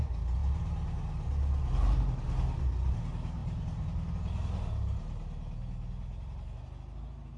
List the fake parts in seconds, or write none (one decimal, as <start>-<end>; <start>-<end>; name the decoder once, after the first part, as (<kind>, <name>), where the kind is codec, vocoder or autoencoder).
3.4-4.1 (vocoder, BigVGAN v2)